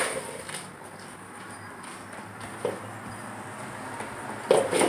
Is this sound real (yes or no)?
yes